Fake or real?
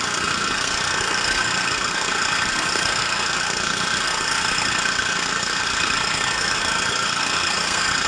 fake